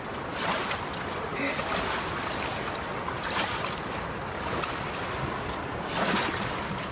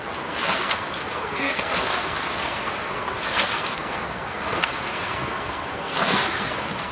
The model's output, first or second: second